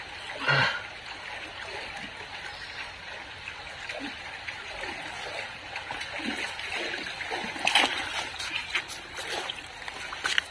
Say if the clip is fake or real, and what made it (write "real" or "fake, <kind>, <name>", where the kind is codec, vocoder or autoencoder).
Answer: real